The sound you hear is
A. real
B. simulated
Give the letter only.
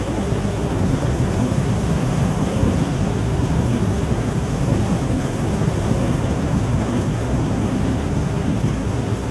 B